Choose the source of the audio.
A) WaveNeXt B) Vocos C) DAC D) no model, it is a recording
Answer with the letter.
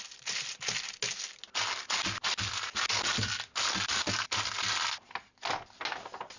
D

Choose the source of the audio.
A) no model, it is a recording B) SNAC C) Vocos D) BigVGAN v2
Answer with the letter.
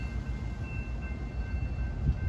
A